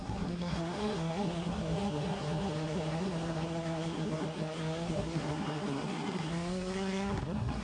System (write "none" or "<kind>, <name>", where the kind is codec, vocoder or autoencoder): codec, SNAC